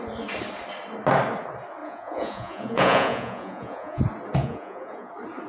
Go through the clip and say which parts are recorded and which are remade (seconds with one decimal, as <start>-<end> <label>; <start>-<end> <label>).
0.0-1.8 recorded; 1.8-4.0 remade; 4.0-4.4 recorded; 4.4-5.1 remade; 5.1-5.5 recorded